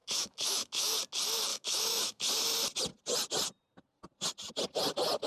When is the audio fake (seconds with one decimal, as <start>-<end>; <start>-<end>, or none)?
0.0-1.0; 1.5-2.3

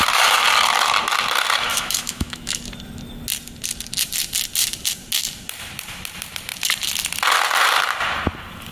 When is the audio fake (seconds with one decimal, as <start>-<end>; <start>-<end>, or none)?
1.7-2.6

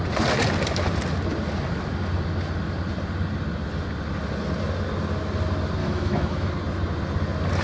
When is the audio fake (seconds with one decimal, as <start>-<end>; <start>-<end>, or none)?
5.8-6.5

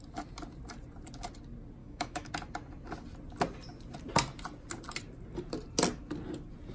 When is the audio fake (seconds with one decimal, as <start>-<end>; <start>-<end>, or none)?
1.8-2.3

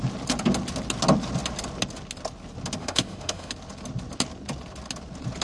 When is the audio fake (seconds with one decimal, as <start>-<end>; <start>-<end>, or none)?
2.8-3.5

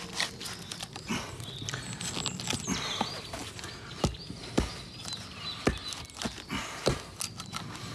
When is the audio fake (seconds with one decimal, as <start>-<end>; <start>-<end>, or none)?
none